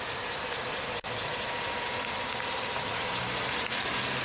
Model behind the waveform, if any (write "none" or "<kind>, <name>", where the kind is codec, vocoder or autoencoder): none